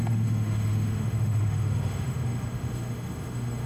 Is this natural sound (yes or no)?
no